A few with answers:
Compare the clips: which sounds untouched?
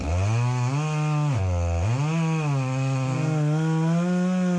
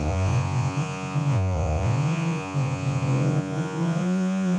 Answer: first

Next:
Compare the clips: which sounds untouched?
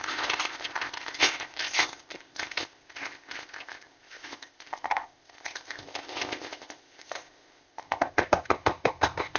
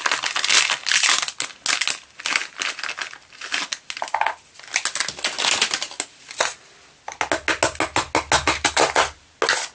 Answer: second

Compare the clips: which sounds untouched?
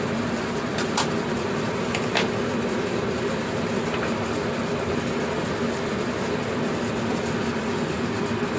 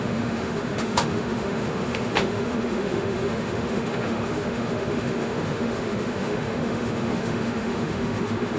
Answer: first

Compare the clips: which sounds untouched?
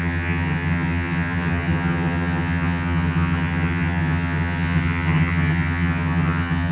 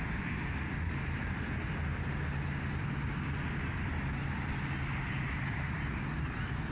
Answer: second